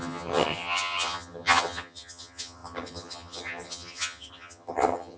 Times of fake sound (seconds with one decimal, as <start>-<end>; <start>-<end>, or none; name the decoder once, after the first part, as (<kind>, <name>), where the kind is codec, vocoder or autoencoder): 0.0-5.2 (vocoder, HiFi-GAN)